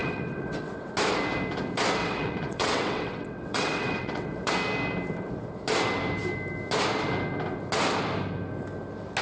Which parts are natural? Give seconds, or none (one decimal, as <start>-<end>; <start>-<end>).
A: 0.9-2.0; 4.5-9.2